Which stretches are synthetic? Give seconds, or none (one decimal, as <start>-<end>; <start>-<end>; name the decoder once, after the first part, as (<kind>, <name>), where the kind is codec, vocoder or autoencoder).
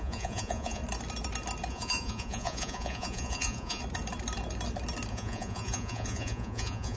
0.0-0.8 (vocoder, Vocos); 1.7-3.8; 5.1-7.0